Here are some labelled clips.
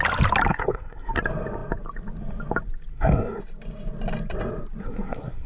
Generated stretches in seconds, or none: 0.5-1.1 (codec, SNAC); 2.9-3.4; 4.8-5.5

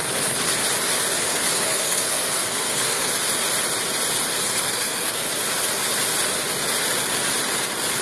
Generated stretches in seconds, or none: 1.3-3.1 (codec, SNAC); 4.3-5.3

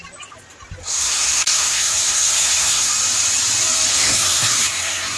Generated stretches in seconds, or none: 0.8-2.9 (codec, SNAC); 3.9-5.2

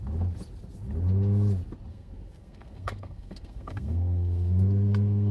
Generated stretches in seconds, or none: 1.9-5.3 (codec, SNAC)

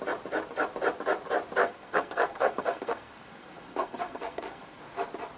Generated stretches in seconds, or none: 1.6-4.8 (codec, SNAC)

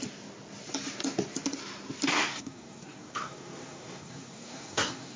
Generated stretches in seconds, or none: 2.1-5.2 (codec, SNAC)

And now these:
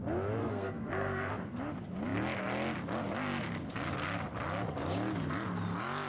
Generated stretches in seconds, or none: 0.4-1.3 (codec, SNAC)